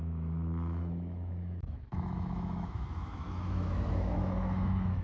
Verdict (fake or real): fake